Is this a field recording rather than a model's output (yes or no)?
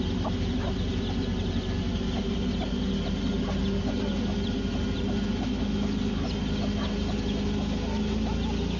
yes